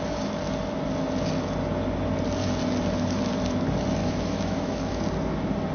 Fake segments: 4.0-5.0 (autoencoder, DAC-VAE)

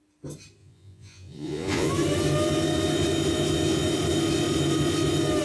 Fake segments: 0.6-1.9 (vocoder, Vocos)

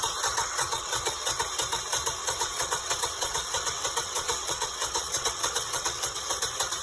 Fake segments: 0.4-1.4 (vocoder, WaveNeXt); 2.2-6.3